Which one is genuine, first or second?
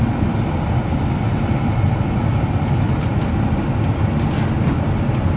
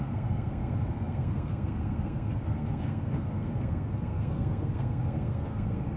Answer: first